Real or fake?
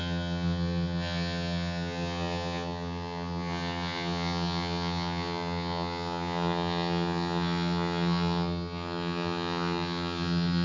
fake